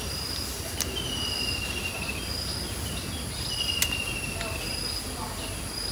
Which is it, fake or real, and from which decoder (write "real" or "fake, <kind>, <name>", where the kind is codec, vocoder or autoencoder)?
real